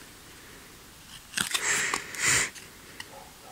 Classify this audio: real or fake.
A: real